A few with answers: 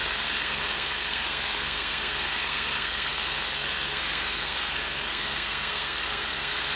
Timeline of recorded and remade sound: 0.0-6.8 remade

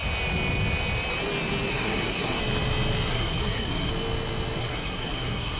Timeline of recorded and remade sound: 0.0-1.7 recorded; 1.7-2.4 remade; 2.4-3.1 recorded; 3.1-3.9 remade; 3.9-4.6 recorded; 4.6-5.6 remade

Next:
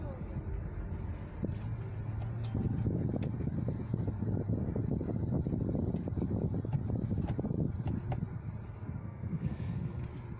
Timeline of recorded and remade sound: 0.0-9.0 recorded; 9.0-10.0 remade; 10.0-10.4 recorded

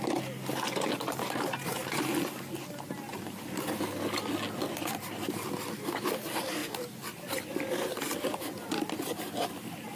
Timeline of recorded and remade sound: 0.0-10.0 recorded